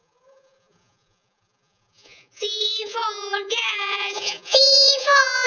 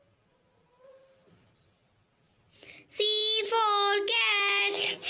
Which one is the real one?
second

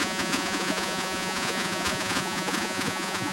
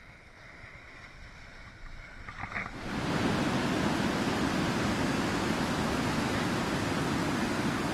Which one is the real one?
second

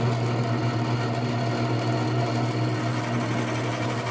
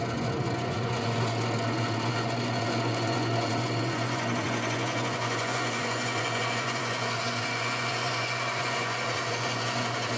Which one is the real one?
first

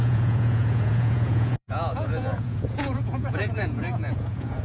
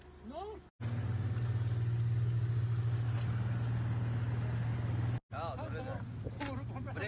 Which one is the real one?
second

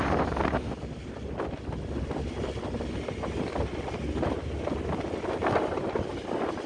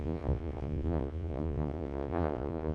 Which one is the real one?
first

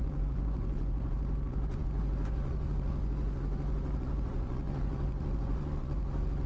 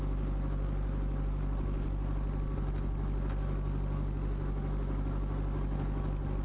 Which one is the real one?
second